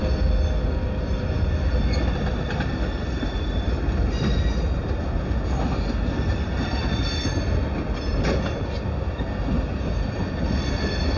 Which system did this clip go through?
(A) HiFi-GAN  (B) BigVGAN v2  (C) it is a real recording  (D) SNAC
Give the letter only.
C